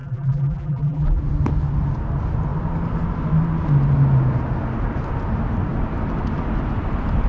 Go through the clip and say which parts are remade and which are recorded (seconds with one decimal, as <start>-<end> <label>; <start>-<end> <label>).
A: 0.0-1.2 remade; 1.2-7.3 recorded